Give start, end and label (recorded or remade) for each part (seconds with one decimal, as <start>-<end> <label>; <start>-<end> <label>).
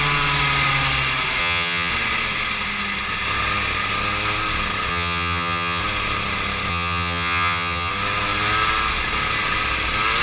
0.0-1.4 recorded; 1.4-1.9 remade; 1.9-4.9 recorded; 4.9-5.8 remade; 5.8-6.7 recorded; 6.7-7.9 remade; 7.9-10.2 recorded